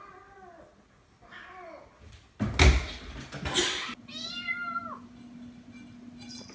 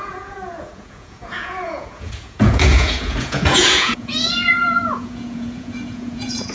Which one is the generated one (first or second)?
second